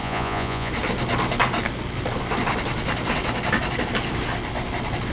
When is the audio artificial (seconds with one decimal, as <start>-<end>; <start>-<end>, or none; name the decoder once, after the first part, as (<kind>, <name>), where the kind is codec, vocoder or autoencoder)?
0.0-0.7 (vocoder, Vocos)